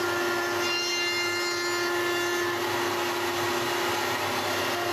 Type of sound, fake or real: real